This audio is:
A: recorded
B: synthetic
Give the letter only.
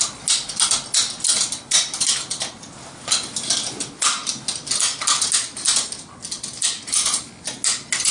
A